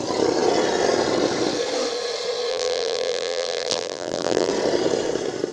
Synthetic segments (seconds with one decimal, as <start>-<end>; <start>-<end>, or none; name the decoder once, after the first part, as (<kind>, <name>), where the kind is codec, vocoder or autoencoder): 2.5-4.5 (vocoder, BigVGAN v2)